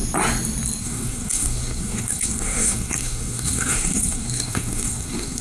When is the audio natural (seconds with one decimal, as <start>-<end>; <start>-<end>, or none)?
0.0-0.8